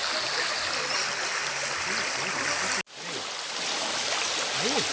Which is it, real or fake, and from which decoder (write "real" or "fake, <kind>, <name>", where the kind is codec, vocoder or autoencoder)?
real